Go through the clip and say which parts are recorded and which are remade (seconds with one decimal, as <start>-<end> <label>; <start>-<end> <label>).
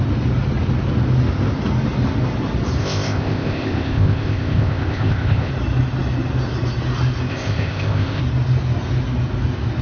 0.0-2.8 recorded; 2.8-5.5 remade; 5.5-7.3 recorded; 7.3-8.2 remade; 8.2-9.8 recorded